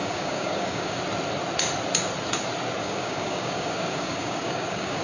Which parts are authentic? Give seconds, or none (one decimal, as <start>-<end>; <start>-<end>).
1.0-2.8